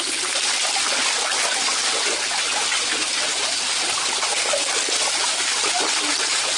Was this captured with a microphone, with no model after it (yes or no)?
yes